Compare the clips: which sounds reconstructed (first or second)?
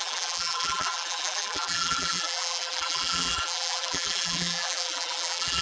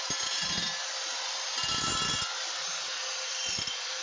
first